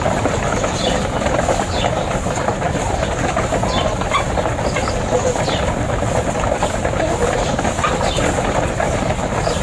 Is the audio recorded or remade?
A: recorded